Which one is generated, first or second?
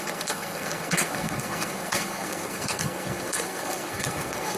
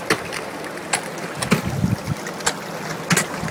first